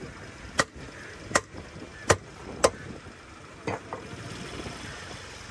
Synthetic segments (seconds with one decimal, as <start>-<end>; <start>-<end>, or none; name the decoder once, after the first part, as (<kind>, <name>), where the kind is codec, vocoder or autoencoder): none

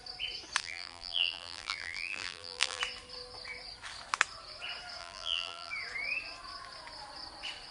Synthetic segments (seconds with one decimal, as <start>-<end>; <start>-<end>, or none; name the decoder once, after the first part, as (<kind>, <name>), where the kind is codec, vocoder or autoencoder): 0.6-2.8 (vocoder, BigVGAN v2); 5.0-5.7

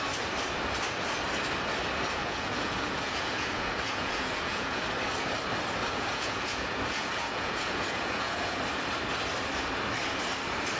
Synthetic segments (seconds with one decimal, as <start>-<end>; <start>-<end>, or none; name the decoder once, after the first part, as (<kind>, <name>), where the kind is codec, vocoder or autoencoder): 2.2-4.8 (vocoder, Vocos); 5.8-8.6

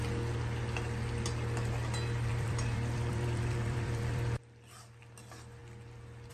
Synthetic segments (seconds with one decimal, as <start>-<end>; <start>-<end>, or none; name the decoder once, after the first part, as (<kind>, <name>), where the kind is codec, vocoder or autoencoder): 2.3-4.4 (vocoder, BigVGAN v2)

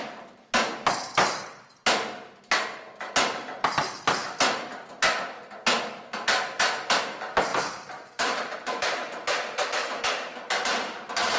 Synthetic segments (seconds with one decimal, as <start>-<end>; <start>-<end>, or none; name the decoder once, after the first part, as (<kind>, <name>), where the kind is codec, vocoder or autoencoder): 7.5-11.4 (vocoder, BigVGAN v2)